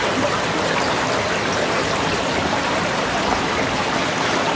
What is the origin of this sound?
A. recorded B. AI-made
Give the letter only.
A